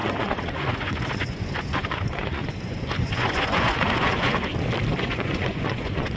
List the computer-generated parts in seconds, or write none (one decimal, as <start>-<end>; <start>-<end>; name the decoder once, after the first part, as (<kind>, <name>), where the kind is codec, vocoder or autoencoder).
0.0-4.5 (vocoder, Vocos); 5.0-6.2